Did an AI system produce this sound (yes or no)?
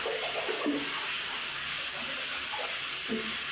no